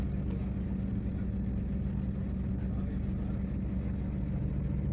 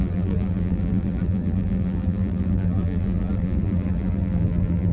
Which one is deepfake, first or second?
second